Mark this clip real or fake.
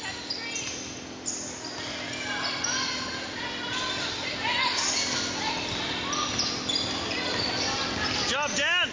real